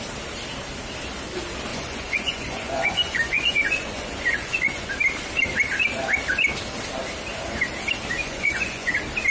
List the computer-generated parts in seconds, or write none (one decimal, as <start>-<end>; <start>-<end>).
1.7-4.9; 8.2-8.9